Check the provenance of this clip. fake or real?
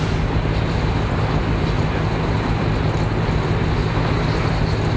real